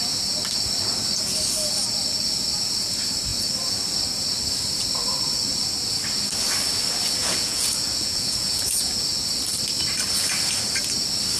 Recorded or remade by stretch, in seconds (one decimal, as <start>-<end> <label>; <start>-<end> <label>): 0.0-7.2 recorded; 7.2-8.9 remade; 8.9-11.4 recorded